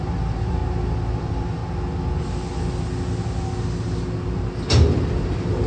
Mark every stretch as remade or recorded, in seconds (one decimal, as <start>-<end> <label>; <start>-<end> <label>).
0.0-0.6 remade; 0.6-1.1 recorded; 1.1-1.6 remade; 1.6-5.0 recorded; 5.0-5.7 remade